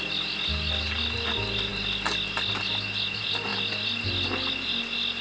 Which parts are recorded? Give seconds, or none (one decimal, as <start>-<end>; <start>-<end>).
0.0-5.2